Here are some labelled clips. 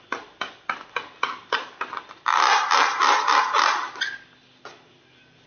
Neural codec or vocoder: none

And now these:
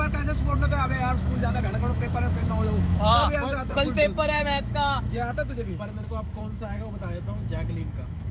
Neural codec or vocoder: autoencoder, DAC-VAE